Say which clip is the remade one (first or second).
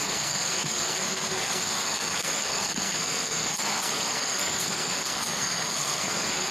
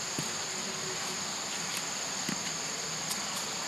first